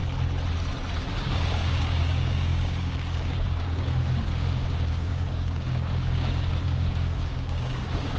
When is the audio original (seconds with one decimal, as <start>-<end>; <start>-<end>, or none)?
0.0-1.1